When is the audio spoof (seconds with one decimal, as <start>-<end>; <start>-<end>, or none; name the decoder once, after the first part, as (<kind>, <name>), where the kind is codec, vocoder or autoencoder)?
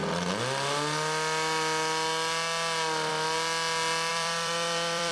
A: 4.1-5.1 (vocoder, BigVGAN v2)